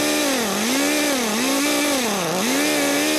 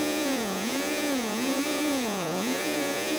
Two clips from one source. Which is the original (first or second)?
first